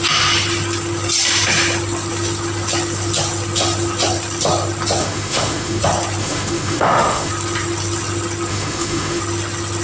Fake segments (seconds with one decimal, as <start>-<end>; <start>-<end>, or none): 5.0-5.8; 6.2-7.3; 8.5-9.2